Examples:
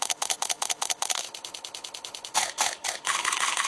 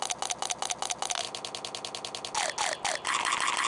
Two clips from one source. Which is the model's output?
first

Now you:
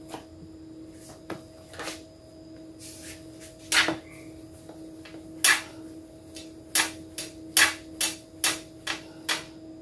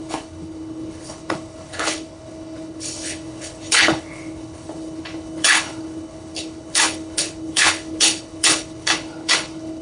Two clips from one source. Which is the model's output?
second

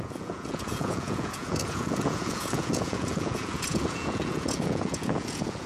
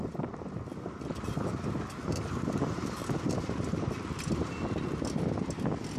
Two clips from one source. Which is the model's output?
first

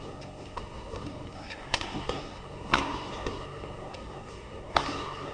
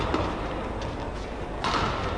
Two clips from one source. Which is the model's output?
first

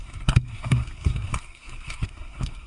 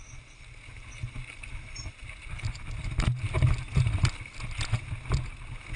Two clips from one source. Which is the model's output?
first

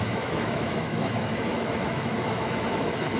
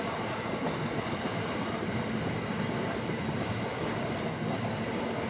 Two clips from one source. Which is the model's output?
first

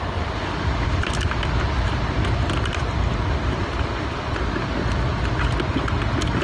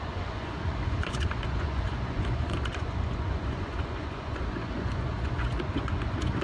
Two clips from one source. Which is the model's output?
second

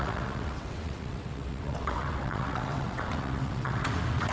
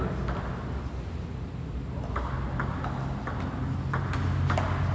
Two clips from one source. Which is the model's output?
first